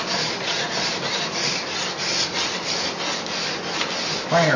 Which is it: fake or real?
real